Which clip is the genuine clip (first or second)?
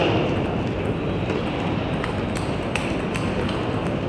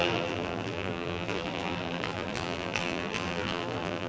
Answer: first